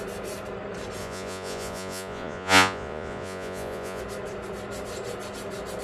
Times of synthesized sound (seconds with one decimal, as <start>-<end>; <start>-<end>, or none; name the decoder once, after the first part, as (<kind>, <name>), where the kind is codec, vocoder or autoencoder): 1.0-4.0 (vocoder, Vocos)